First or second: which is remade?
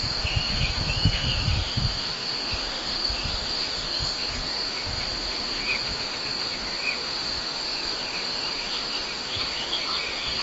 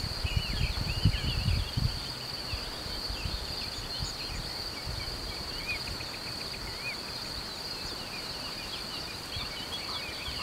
first